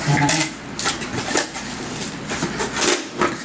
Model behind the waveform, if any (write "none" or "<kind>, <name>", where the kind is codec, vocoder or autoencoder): none